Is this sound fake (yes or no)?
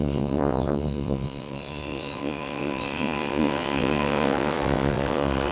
yes